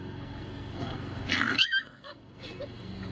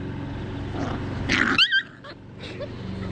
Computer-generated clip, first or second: first